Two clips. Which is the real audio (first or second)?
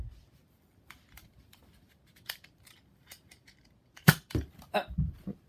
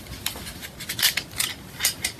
second